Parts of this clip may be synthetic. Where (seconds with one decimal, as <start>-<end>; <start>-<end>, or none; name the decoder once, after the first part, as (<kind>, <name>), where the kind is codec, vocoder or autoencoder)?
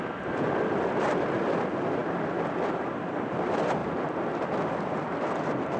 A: none